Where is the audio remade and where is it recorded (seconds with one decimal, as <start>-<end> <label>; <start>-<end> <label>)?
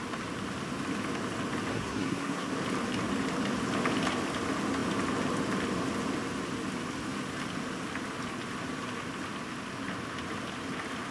0.0-1.7 recorded; 1.7-2.5 remade; 2.5-11.1 recorded